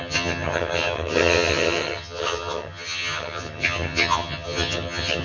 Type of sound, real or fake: fake